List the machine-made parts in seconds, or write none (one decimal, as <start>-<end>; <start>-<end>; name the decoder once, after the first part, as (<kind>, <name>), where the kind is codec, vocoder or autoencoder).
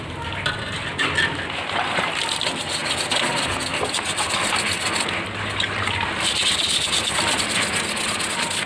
none